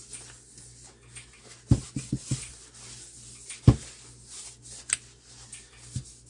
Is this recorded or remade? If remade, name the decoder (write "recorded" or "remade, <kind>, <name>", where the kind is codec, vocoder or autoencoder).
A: recorded